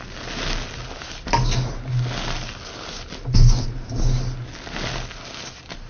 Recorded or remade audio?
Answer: recorded